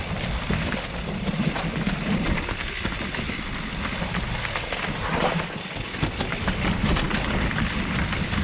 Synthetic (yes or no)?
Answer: no